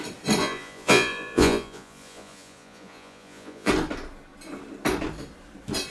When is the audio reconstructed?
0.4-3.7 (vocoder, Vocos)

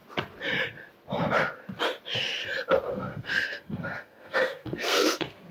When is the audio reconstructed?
2.9-5.5 (codec, SNAC)

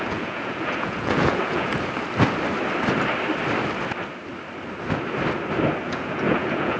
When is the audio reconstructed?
0.0-1.7 (vocoder, Vocos); 5.8-6.8

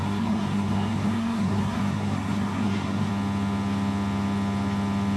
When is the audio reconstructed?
0.0-3.1 (codec, SNAC)

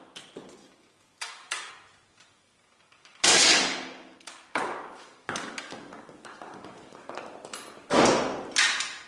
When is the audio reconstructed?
0.6-1.7 (codec, DAC); 2.1-7.1

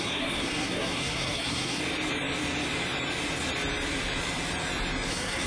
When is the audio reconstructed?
0.0-1.8 (codec, SNAC); 5.1-5.5

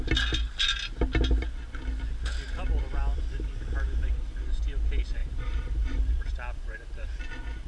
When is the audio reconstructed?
3.1-4.4 (vocoder, BigVGAN v2); 5.2-7.2

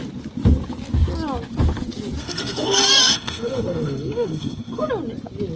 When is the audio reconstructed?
2.2-4.9 (codec, SNAC)